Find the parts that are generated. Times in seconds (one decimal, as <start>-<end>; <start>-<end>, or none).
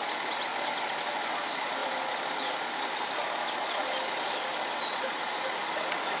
none